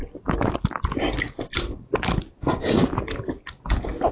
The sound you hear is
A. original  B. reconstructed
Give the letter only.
A